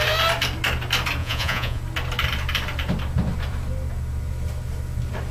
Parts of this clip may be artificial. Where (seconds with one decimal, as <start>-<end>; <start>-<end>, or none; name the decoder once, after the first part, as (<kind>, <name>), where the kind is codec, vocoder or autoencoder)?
1.2-1.8 (vocoder, Vocos)